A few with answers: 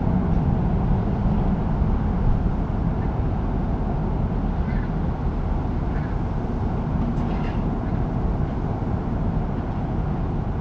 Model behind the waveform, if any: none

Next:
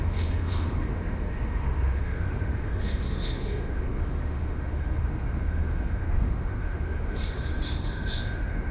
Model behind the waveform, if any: autoencoder, DAC-VAE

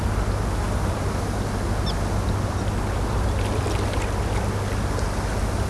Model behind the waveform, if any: none